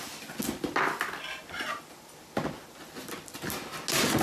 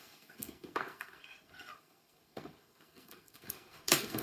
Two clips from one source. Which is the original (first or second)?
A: first